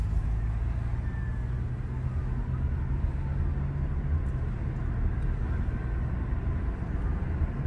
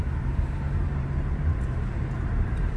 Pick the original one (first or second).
first